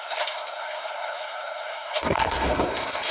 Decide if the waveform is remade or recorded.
remade